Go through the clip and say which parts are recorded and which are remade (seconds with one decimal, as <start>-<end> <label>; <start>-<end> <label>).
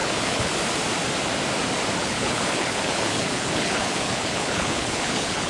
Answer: 0.0-0.5 remade; 0.5-2.0 recorded; 2.0-5.5 remade